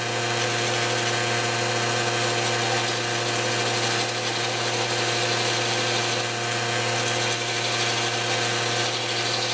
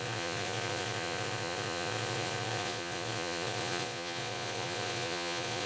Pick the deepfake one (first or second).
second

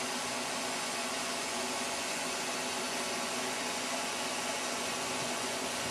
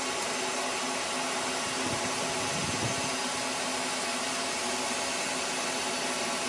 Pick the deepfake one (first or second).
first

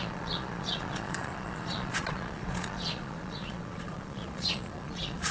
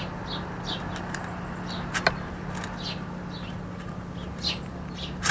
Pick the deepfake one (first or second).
first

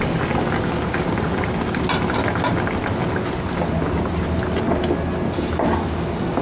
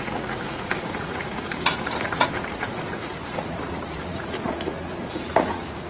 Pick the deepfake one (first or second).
second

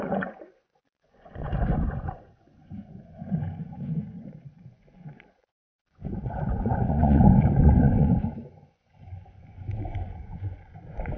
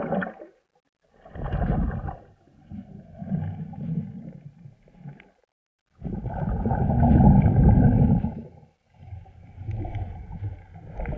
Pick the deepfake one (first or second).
first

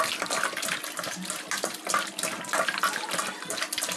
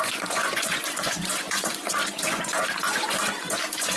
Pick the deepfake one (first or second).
second